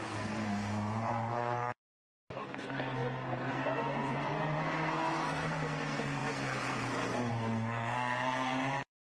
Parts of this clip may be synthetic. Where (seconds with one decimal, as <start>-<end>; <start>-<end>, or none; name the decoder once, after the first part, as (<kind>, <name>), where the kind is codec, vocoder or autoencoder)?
0.0-9.1 (codec, SNAC)